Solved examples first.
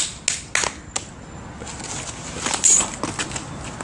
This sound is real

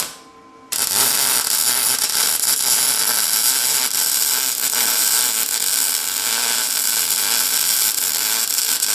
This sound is fake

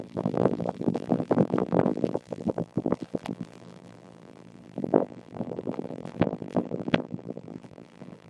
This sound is fake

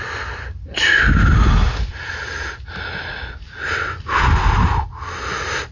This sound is real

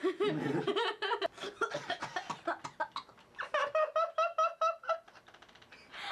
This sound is real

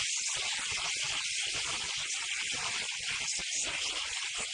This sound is fake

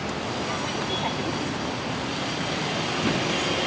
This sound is real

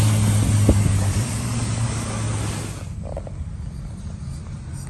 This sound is real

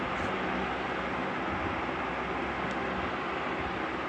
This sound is real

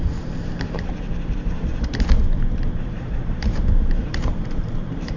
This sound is fake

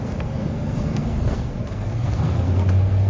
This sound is fake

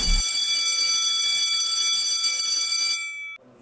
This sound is real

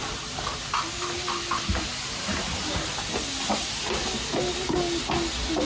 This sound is real